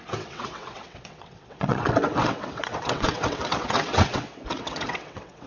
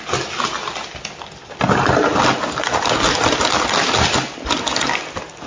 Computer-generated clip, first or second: first